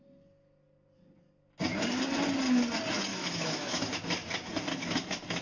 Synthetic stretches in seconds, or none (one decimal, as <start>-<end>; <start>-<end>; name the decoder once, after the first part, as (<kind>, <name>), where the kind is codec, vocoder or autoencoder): 3.1-4.0 (autoencoder, DAC-VAE); 4.7-5.4